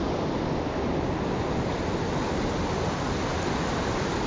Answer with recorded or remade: recorded